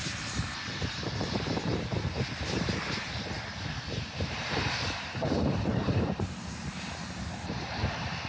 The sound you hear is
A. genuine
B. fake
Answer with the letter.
B